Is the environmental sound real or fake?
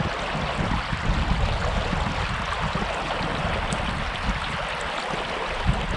real